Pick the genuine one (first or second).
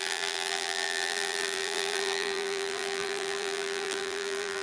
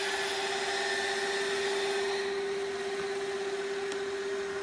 second